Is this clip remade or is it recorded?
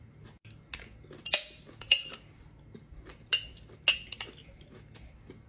recorded